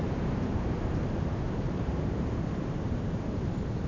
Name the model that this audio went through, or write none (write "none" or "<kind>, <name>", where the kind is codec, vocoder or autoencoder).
vocoder, BigVGAN v2